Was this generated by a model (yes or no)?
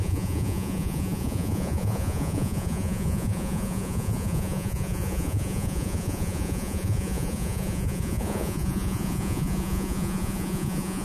yes